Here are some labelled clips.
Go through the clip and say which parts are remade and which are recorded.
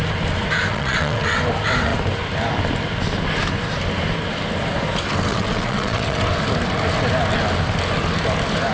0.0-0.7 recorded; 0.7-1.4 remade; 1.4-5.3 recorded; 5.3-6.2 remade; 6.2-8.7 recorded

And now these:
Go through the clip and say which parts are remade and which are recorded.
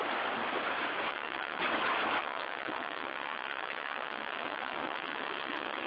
0.0-1.1 recorded; 1.1-1.6 remade; 1.6-2.2 recorded; 2.2-5.9 remade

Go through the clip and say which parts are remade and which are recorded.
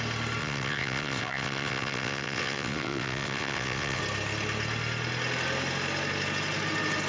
0.0-0.4 recorded; 0.4-4.0 remade; 4.0-7.1 recorded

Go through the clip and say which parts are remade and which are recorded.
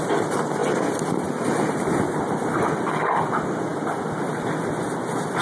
0.0-5.4 recorded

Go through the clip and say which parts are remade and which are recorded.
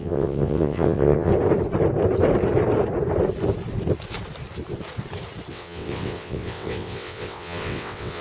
0.0-1.3 remade; 1.3-5.5 recorded; 5.5-8.2 remade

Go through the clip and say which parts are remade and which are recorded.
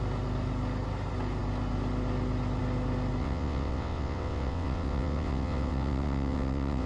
0.0-3.2 recorded; 3.2-6.9 remade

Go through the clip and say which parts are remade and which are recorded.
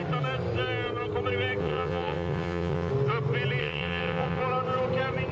0.0-1.6 recorded; 1.6-2.9 remade; 2.9-3.6 recorded; 3.6-4.4 remade; 4.4-5.3 recorded